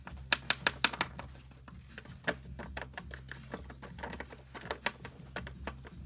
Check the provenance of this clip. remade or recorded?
recorded